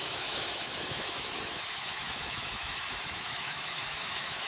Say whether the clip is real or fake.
fake